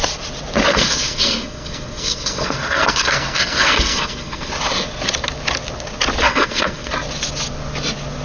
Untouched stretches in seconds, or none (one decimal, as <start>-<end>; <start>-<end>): 0.0-0.7; 4.5-6.3; 6.9-8.2